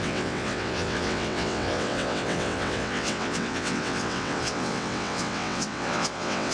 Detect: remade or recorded remade